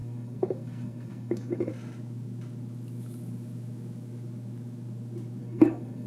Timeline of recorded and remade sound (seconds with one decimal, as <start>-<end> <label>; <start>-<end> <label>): 0.0-1.7 remade; 1.7-5.4 recorded; 5.4-6.1 remade